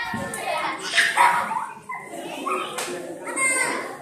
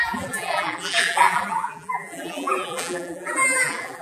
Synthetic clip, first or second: second